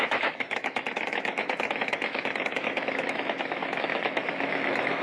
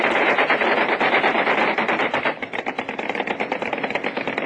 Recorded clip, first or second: second